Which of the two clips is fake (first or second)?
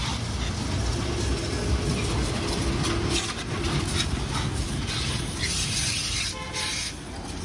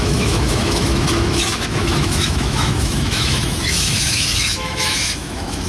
second